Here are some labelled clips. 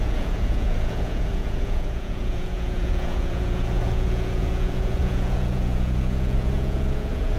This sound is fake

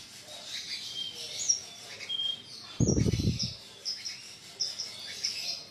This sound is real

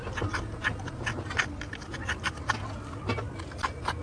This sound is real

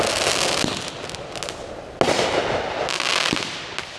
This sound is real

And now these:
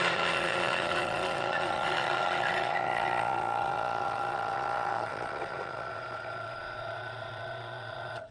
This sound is fake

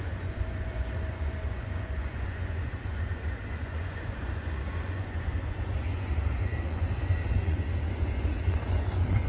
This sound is fake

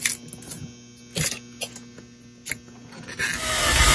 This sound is real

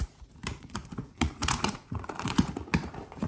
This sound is fake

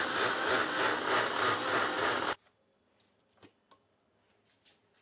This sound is real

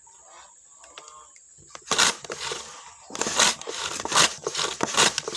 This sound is real